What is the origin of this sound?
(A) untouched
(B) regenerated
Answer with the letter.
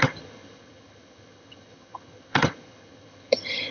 B